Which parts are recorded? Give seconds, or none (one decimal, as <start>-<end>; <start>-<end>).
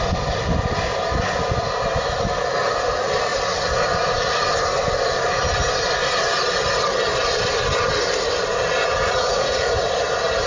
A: 0.0-8.6; 9.7-10.5